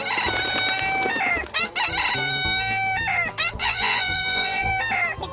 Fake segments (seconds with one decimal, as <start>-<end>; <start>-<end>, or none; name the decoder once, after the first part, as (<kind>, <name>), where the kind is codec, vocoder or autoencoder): 3.6-4.7 (vocoder, Vocos)